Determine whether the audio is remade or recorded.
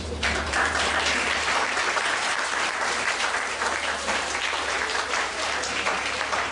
remade